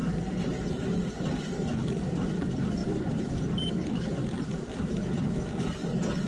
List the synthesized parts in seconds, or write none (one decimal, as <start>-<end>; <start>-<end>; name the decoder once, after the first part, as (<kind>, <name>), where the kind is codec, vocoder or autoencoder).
0.0-0.7 (vocoder, BigVGAN v2); 2.8-3.7; 4.2-4.9